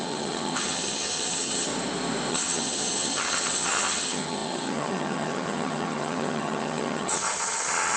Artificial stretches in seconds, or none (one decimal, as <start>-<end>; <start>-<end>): 0.0-1.7; 2.3-8.0